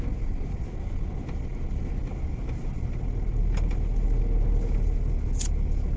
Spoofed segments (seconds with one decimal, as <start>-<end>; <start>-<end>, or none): none